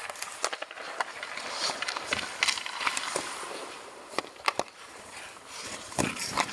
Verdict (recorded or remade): recorded